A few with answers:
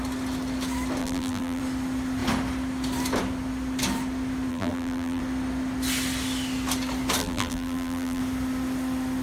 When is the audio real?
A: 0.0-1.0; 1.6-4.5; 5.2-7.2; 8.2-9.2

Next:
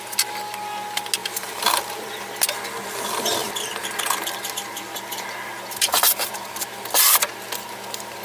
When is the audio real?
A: 0.0-1.2; 2.2-3.4; 6.6-8.2

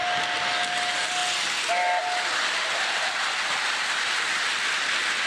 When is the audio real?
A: 0.0-5.3

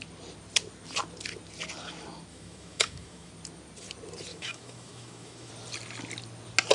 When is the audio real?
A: 0.0-2.3; 3.3-4.3; 5.5-6.7